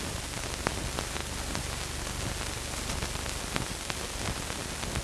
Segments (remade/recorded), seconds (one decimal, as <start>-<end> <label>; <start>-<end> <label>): 0.0-5.0 recorded